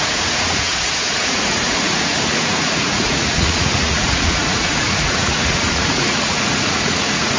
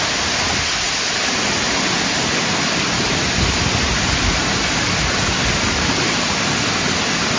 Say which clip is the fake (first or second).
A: first